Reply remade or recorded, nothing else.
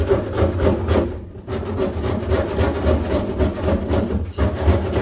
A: recorded